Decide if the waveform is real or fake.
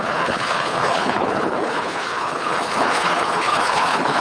fake